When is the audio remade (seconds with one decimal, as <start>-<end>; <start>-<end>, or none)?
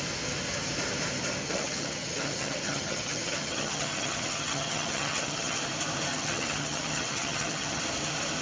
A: 1.4-5.6; 6.1-7.8